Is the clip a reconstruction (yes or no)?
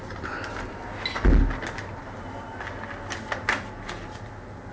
no